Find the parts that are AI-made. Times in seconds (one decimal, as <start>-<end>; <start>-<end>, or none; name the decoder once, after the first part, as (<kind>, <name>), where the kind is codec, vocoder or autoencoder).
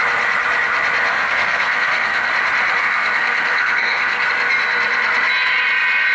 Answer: 1.1-2.3 (codec, SNAC); 2.8-4.3